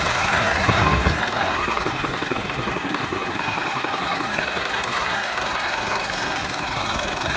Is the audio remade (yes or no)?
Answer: yes